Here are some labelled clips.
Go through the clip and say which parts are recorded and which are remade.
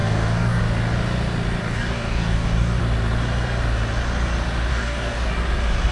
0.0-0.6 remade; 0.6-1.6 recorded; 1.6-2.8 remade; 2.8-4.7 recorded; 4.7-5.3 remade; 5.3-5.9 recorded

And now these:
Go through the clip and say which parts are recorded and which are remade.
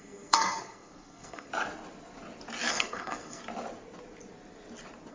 0.0-1.5 remade; 1.5-2.7 recorded; 2.7-3.4 remade; 3.4-5.1 recorded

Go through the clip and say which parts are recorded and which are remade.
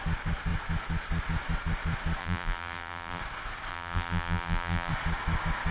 0.0-2.2 recorded; 2.2-3.2 remade; 3.2-3.7 recorded; 3.7-4.9 remade; 4.9-5.7 recorded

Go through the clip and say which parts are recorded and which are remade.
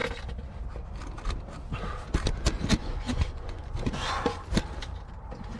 0.0-2.8 recorded; 2.8-4.4 remade; 4.4-5.6 recorded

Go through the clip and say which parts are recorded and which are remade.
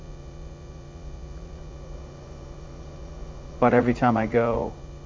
0.0-5.1 remade